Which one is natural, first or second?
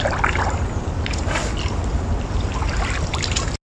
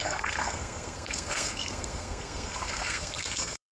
first